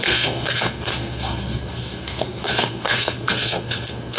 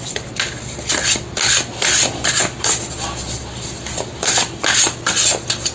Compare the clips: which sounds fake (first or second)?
first